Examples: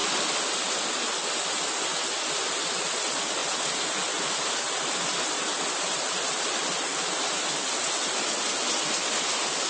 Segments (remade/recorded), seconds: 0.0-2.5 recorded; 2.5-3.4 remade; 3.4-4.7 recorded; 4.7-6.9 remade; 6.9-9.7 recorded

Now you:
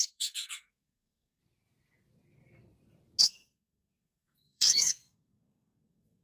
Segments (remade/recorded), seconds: 0.0-1.4 remade; 1.4-3.2 recorded; 3.2-6.2 remade

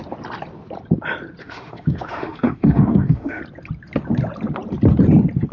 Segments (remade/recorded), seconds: 0.0-1.4 recorded; 1.4-3.4 remade; 3.4-5.5 recorded

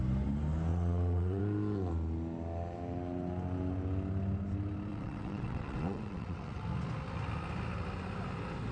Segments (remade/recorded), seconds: 0.0-0.7 recorded; 0.7-1.4 remade; 1.4-4.9 recorded; 4.9-6.6 remade; 6.6-8.7 recorded

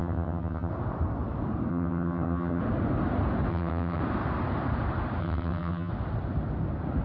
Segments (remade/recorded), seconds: 0.0-0.7 remade; 0.7-1.7 recorded; 1.7-2.6 remade; 2.6-3.5 recorded; 3.5-4.0 remade; 4.0-5.2 recorded; 5.2-5.9 remade; 5.9-7.0 recorded

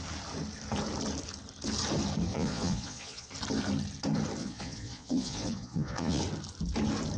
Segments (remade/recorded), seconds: 0.0-2.3 recorded; 2.3-3.3 remade; 3.3-4.4 recorded; 4.4-6.2 remade; 6.2-7.2 recorded

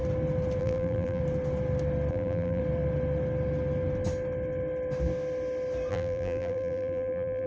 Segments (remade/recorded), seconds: 0.0-0.6 recorded; 0.6-1.2 remade; 1.2-2.1 recorded; 2.1-2.6 remade; 2.6-5.9 recorded; 5.9-7.5 remade

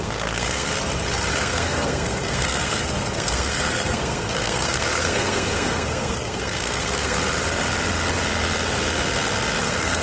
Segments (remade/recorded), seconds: 0.0-0.7 remade; 0.7-1.3 recorded; 1.3-7.2 remade; 7.2-9.6 recorded; 9.6-10.0 remade